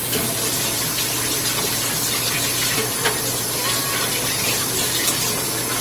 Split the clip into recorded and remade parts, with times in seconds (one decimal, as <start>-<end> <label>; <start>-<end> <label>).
0.0-5.8 recorded